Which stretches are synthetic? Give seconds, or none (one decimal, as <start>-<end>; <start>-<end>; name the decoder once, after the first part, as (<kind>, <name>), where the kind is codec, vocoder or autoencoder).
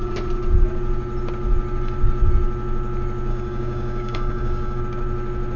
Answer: 3.3-4.8 (codec, DAC)